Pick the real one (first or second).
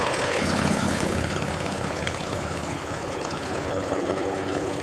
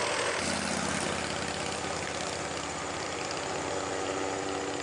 second